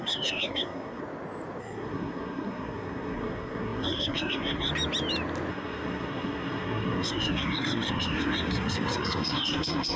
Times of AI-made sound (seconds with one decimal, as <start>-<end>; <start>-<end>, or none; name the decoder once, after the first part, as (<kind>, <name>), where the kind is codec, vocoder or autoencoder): 0.0-1.0 (codec, SNAC); 1.6-4.7; 5.5-10.0